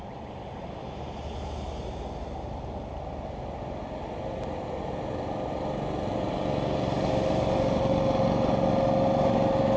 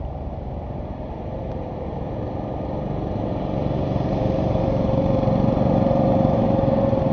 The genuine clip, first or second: first